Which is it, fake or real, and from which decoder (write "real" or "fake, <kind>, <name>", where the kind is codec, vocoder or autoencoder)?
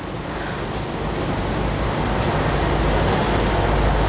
real